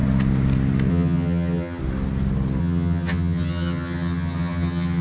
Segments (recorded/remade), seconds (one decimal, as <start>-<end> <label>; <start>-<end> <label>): 0.0-0.9 recorded; 0.9-1.8 remade; 1.8-2.6 recorded; 2.6-5.0 remade